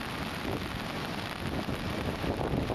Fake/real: real